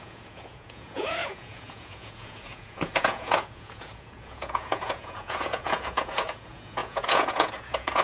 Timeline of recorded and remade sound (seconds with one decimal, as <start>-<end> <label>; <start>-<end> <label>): 0.0-8.0 remade